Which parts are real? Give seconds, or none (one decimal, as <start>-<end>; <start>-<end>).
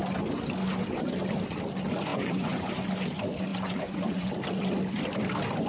0.0-2.1; 2.7-3.5; 4.3-5.7